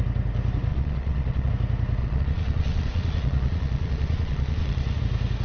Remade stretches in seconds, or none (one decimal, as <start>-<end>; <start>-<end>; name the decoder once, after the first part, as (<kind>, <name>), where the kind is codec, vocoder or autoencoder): 0.7-1.5 (vocoder, Vocos); 2.0-5.0